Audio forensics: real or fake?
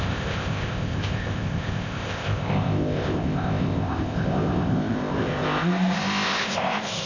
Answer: fake